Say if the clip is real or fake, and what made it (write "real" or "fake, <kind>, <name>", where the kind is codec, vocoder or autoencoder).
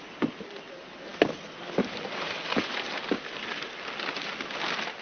real